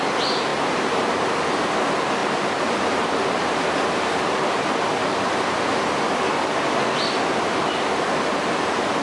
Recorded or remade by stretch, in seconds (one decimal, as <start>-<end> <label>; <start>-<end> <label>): 0.0-0.5 recorded; 0.5-1.3 remade; 1.3-2.2 recorded; 2.2-4.6 remade; 4.6-9.0 recorded